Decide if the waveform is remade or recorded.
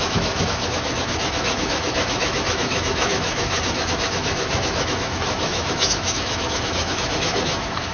remade